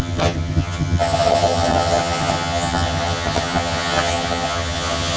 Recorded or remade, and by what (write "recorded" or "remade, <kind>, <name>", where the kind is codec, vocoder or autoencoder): remade, vocoder, HiFi-GAN